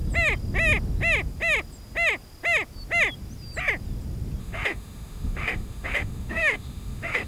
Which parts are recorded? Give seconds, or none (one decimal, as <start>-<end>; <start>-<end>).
0.0-4.4